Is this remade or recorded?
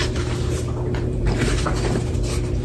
remade